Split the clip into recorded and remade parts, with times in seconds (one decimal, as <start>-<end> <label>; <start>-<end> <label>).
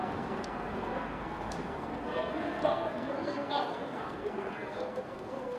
0.0-5.6 remade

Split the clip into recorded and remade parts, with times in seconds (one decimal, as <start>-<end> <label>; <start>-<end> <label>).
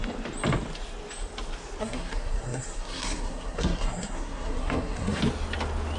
0.0-1.8 recorded; 1.8-5.2 remade; 5.2-6.0 recorded